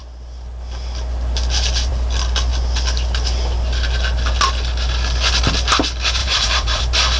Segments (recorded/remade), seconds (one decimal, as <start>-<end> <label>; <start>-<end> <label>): 0.0-6.2 recorded; 6.2-6.8 remade; 6.8-7.2 recorded